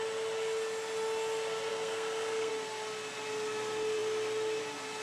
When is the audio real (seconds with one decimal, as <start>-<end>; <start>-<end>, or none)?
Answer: 0.0-1.7; 2.5-5.0